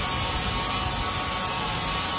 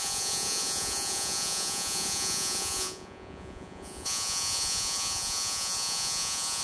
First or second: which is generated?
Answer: second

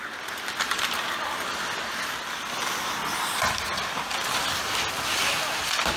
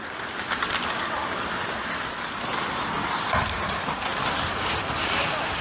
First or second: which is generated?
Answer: second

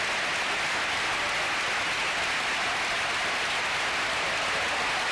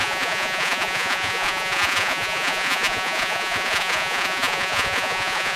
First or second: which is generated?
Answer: second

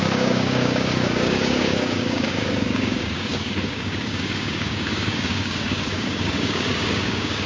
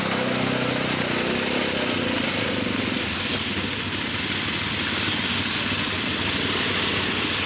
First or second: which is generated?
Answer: first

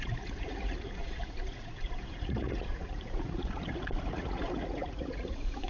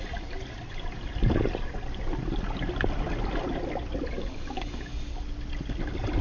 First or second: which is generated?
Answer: first